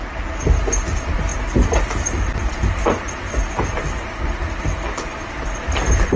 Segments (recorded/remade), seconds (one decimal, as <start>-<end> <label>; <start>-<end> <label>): 0.0-6.2 recorded